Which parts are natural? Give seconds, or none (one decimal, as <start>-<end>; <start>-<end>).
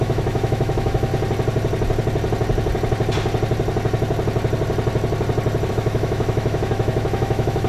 1.1-5.7